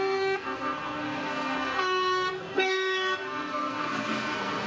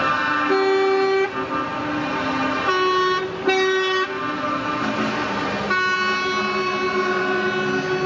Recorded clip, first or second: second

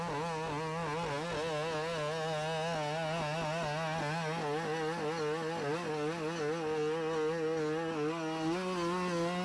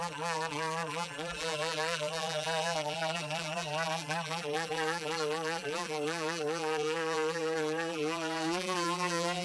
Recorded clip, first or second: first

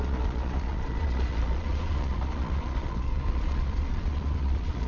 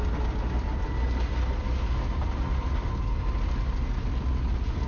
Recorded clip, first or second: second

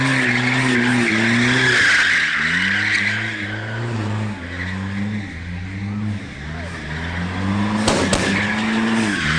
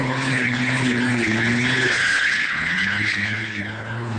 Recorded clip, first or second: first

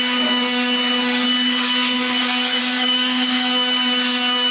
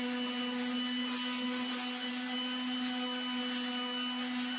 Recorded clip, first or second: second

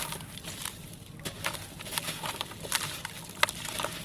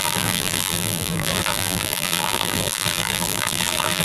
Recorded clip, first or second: first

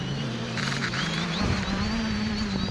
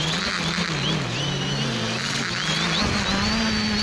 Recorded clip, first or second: second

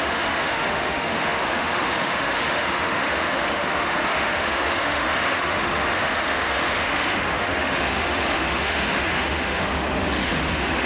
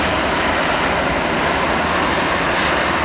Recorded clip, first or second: second